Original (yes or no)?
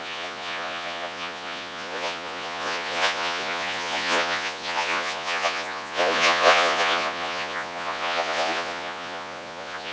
no